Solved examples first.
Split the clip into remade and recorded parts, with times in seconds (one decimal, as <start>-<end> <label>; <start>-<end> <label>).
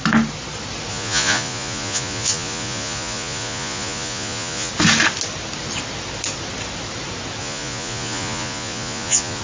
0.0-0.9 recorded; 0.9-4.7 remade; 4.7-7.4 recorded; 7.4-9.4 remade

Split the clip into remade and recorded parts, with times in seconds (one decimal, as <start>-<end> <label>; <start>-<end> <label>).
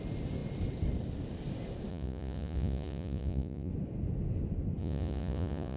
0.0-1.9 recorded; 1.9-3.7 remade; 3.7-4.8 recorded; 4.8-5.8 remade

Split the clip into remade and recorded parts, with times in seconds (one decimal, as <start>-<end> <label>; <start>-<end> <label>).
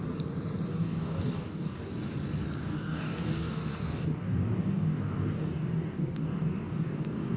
0.0-0.7 recorded; 0.7-1.9 remade; 1.9-2.7 recorded; 2.7-7.4 remade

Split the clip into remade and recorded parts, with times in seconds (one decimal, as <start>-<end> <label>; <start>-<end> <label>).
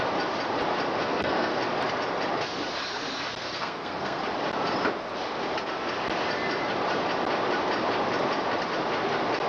0.0-1.0 recorded; 1.0-1.6 remade; 1.6-3.4 recorded; 3.4-4.2 remade; 4.2-9.5 recorded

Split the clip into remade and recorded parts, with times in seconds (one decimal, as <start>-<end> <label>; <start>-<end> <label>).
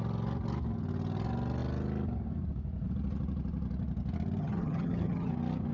0.0-4.4 recorded; 4.4-5.3 remade; 5.3-5.7 recorded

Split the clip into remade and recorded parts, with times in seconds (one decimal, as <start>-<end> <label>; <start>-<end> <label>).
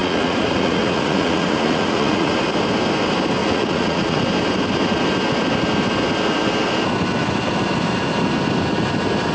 0.0-2.3 remade; 2.3-3.4 recorded; 3.4-4.2 remade; 4.2-9.3 recorded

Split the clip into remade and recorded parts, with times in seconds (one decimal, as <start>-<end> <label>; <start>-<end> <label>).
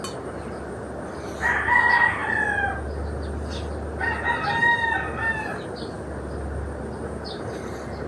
0.0-8.1 recorded